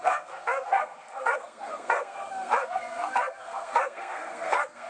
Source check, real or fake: fake